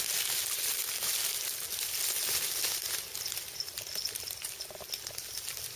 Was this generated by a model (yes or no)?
no